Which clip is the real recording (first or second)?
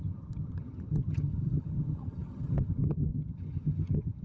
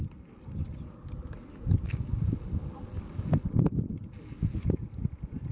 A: second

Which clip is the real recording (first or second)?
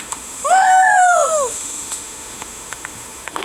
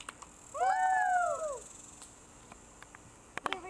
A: second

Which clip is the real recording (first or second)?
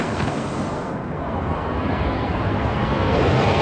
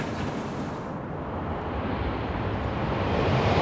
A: second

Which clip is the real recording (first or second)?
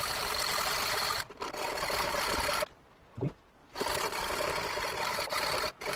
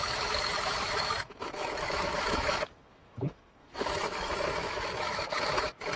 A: first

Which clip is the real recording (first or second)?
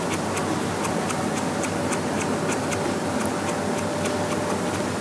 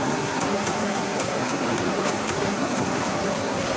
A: first